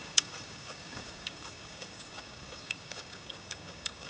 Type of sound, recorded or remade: remade